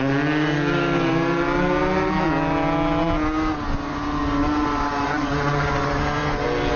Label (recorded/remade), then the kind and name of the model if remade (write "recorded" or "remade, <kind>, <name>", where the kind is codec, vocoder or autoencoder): recorded